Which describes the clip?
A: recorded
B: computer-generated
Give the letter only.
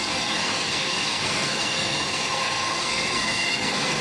B